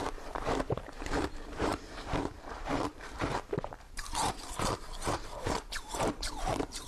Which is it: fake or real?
fake